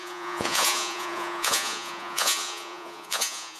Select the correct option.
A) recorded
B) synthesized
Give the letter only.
B